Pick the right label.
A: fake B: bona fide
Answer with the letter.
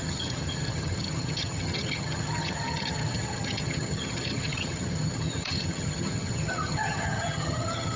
A